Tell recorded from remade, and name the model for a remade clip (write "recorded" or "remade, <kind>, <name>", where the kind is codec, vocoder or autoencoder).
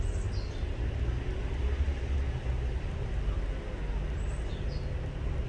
recorded